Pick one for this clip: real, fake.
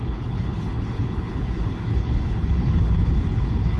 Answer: fake